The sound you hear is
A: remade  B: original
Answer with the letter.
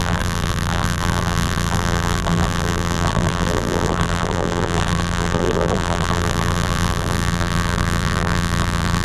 A